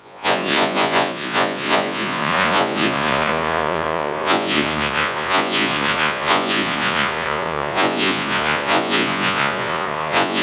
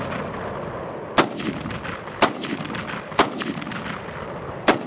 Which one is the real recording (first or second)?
second